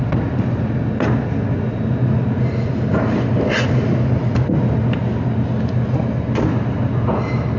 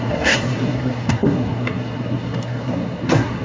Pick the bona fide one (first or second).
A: first